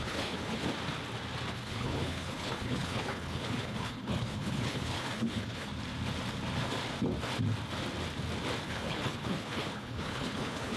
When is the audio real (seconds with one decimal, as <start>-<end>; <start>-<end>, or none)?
0.6-1.5; 5.7-8.6